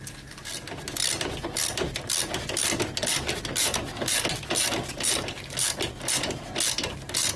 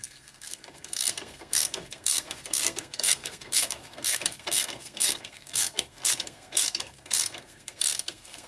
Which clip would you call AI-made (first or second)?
second